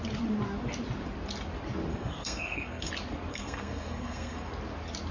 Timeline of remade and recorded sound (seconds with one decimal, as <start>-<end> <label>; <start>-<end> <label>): 0.0-1.9 recorded; 1.9-2.9 remade; 2.9-3.3 recorded; 3.3-4.5 remade; 4.5-5.1 recorded